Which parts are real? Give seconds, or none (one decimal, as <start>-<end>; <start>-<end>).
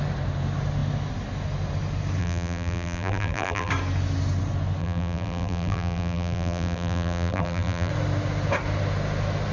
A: 0.0-2.2; 3.7-4.8; 7.9-9.5